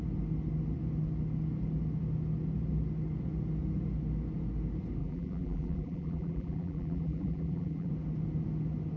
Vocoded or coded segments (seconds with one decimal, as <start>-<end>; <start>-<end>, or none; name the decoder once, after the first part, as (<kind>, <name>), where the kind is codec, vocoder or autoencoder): 5.0-7.9 (vocoder, BigVGAN v2)